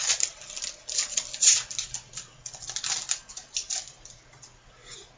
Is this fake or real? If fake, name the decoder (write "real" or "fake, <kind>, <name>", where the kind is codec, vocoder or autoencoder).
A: real